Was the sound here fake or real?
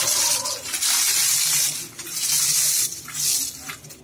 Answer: real